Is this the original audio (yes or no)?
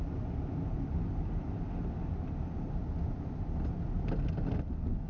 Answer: yes